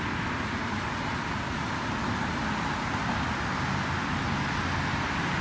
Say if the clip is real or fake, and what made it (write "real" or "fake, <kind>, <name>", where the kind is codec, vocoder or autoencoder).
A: real